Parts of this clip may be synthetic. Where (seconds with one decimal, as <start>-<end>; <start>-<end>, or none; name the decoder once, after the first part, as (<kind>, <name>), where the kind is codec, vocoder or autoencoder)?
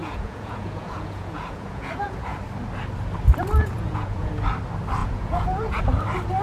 0.0-2.4 (vocoder, Vocos); 3.6-4.3; 5.0-5.8